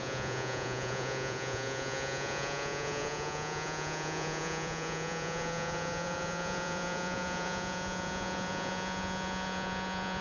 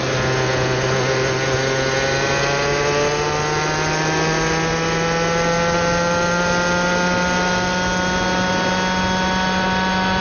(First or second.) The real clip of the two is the second